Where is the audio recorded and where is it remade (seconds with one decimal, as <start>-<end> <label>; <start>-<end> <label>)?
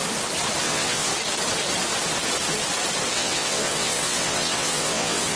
0.0-0.6 recorded; 0.6-1.1 remade; 1.1-3.1 recorded; 3.1-5.4 remade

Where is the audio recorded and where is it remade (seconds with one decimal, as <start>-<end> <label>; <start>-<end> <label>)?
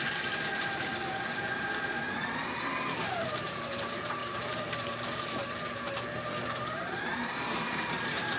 0.0-8.4 remade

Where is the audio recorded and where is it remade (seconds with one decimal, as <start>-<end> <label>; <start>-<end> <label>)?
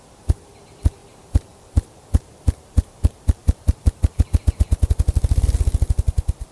0.0-1.0 recorded; 1.0-4.9 remade; 4.9-6.5 recorded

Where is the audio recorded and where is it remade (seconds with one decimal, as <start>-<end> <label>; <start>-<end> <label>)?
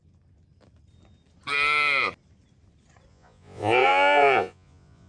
0.0-3.1 recorded; 3.1-5.1 remade